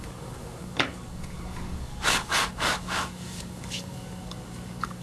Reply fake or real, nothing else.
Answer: fake